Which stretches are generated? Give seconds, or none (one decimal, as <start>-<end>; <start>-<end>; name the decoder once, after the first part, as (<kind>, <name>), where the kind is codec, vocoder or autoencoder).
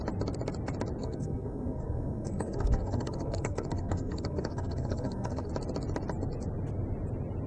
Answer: 1.0-5.5 (codec, SNAC)